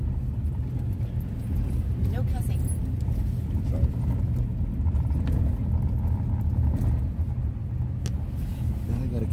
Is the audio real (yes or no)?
yes